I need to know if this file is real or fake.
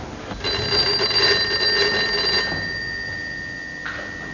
real